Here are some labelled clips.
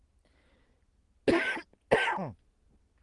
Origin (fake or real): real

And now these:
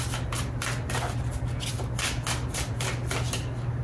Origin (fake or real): real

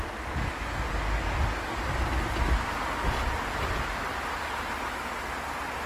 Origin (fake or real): real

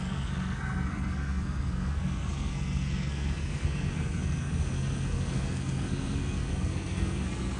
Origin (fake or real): fake